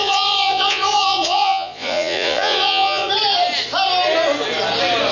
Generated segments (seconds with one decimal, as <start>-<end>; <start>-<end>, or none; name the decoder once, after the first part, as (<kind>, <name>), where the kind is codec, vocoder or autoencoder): 0.0-3.1 (vocoder, Vocos)